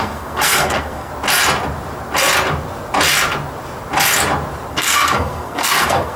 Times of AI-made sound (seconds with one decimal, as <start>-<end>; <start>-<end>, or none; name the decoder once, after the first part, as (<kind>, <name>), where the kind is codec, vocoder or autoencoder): 0.0-1.1 (codec, SNAC); 4.7-6.2